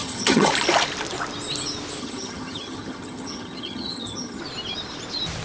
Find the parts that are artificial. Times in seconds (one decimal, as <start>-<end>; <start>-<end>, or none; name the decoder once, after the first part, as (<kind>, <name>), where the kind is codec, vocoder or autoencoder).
0.0-0.5 (vocoder, HiFi-GAN); 2.0-4.4